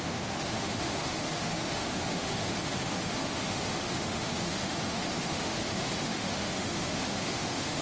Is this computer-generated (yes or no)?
yes